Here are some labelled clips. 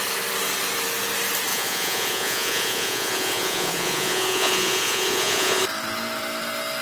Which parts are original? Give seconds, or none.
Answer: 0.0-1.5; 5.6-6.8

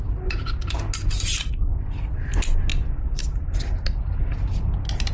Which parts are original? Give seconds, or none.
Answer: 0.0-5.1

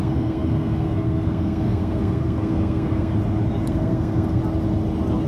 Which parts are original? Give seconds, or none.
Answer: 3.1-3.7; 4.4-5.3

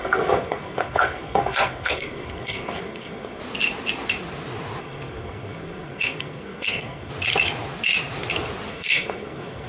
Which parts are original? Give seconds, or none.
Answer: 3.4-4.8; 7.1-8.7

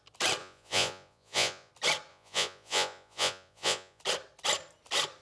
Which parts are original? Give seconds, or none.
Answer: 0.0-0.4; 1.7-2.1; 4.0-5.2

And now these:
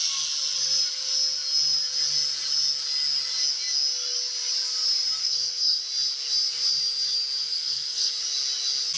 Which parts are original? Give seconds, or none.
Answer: 0.0-5.2; 5.8-7.4; 8.1-9.0